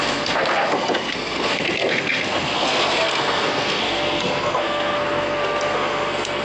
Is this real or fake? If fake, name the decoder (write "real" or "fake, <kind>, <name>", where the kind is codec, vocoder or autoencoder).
fake, codec, SNAC